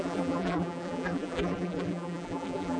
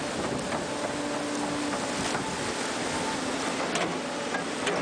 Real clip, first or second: second